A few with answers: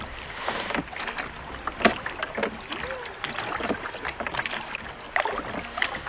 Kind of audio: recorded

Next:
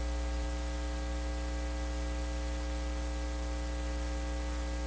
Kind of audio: recorded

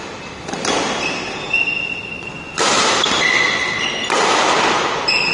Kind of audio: recorded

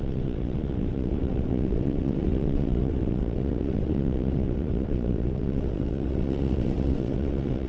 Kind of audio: remade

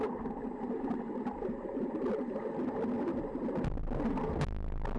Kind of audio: recorded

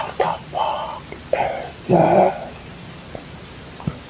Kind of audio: recorded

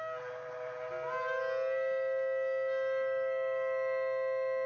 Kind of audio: recorded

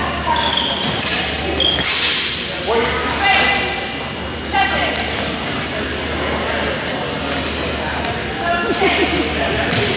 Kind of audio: recorded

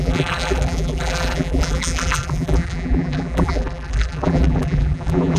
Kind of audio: remade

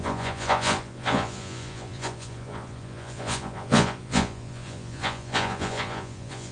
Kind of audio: remade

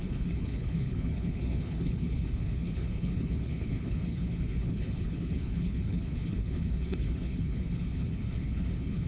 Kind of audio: remade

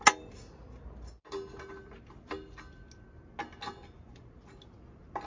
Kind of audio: recorded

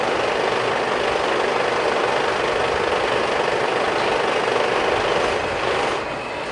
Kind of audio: recorded